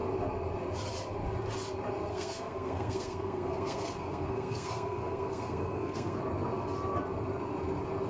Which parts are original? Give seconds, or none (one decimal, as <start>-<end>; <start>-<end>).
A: 0.0-2.1; 6.2-8.1